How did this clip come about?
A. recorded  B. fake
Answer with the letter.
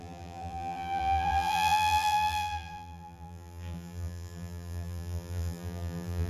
B